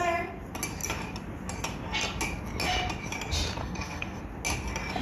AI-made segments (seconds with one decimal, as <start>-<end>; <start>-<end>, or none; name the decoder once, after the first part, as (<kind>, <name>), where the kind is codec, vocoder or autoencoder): 3.6-4.2 (codec, SNAC)

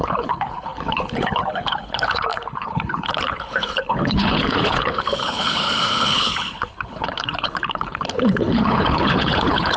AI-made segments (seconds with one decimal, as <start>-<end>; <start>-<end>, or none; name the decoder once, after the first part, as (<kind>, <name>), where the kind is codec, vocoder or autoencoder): 0.0-9.8 (codec, HILCodec)

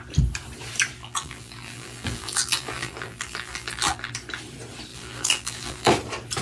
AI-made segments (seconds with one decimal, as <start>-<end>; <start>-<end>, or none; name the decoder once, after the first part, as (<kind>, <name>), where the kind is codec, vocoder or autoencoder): 1.0-4.1 (vocoder, BigVGAN v2); 4.9-5.9

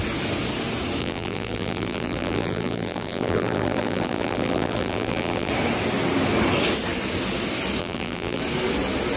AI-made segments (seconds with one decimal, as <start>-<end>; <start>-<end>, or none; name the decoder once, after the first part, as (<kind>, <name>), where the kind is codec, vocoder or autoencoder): 1.0-5.5 (vocoder, BigVGAN v2); 7.8-8.4

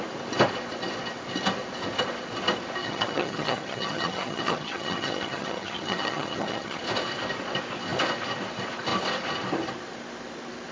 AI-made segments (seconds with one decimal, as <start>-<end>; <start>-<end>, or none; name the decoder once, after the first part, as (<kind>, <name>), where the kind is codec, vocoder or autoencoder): 2.8-6.8 (vocoder, HiFi-GAN)